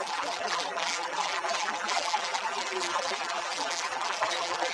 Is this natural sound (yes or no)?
no